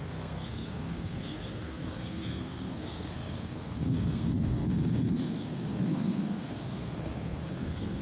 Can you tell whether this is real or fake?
fake